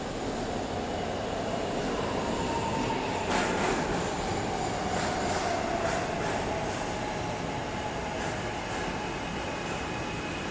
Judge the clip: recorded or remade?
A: recorded